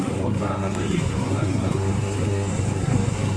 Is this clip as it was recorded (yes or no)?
no